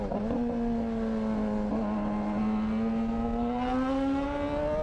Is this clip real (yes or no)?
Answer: yes